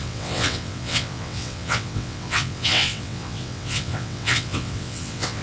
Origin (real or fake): fake